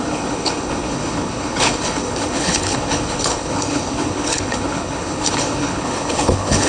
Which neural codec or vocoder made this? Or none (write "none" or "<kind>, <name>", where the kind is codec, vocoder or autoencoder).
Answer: codec, HILCodec